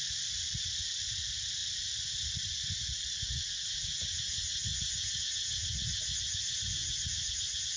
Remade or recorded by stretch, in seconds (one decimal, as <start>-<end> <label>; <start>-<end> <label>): 0.0-7.8 recorded